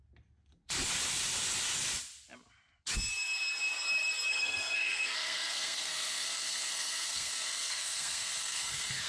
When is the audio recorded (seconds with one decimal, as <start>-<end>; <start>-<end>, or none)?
0.0-4.3